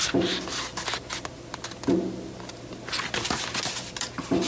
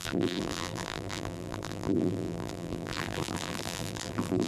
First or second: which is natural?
first